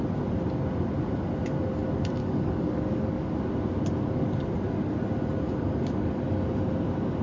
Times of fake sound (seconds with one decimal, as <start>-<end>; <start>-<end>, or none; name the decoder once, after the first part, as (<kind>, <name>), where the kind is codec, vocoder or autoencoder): 2.2-3.3 (codec, DAC)

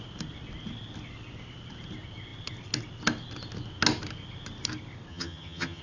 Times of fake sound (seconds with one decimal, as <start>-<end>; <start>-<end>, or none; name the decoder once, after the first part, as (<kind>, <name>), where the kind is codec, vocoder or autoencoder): 5.1-5.8 (vocoder, HiFi-GAN)

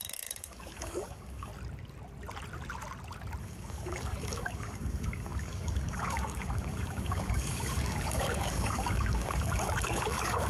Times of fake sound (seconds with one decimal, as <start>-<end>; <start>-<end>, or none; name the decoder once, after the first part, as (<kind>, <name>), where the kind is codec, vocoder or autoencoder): 0.0-1.5 (codec, DAC); 3.4-10.5

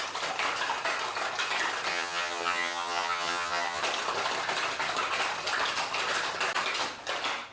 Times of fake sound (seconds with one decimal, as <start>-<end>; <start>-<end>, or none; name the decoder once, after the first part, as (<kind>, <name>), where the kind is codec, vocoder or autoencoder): 1.9-3.8 (vocoder, HiFi-GAN)

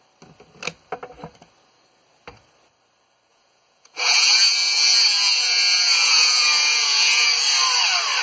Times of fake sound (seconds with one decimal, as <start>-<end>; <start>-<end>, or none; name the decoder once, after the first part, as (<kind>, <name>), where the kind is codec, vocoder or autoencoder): 3.3-7.3 (vocoder, Vocos)

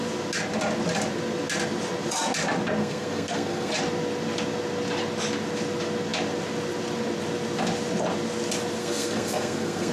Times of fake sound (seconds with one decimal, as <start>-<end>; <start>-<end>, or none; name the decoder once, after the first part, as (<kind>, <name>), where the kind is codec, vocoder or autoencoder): 2.8-3.7 (codec, SNAC); 8.8-9.9

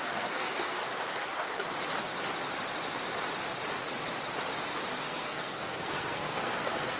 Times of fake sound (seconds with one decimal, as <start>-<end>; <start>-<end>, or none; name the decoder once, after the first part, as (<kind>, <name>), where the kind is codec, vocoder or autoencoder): 0.0-0.8 (codec, SNAC); 5.0-7.0